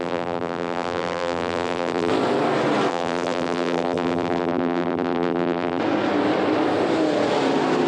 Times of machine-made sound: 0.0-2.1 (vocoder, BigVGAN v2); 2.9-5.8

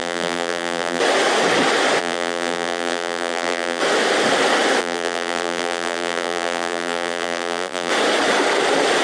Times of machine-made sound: 0.0-1.0 (vocoder, BigVGAN v2); 2.0-3.8; 4.8-7.9

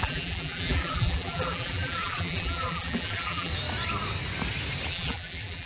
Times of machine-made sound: 0.0-3.5 (vocoder, BigVGAN v2); 4.9-5.7

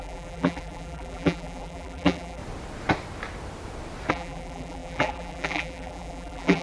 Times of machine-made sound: 0.0-2.4 (vocoder, BigVGAN v2); 4.1-6.6

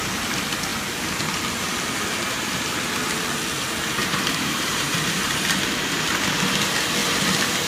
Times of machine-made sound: 4.0-5.3 (vocoder, BigVGAN v2)

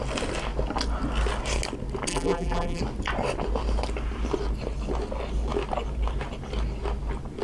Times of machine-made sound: 2.1-2.8 (vocoder, BigVGAN v2)